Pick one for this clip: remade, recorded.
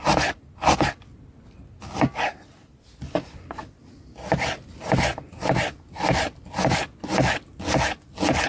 recorded